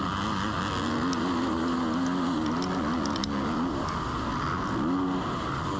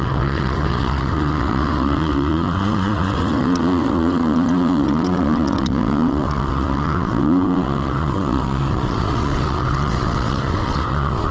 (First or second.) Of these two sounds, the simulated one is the second